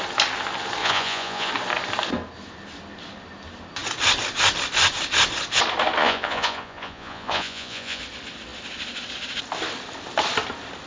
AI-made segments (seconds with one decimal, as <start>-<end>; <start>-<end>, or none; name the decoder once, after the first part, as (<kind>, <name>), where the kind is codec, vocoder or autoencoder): 0.8-1.5 (vocoder, Vocos); 6.0-8.0